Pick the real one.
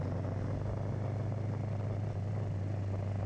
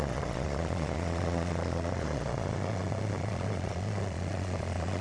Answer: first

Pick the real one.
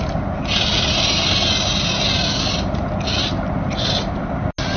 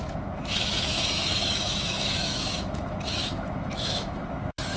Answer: first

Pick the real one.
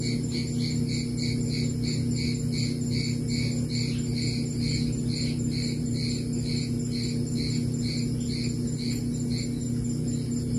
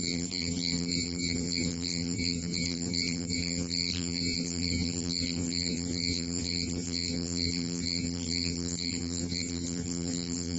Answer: first